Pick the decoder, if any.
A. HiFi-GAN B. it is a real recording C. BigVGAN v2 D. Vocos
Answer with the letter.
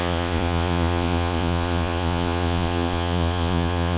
D